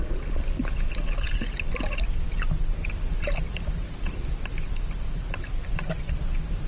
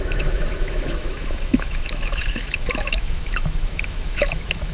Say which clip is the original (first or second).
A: first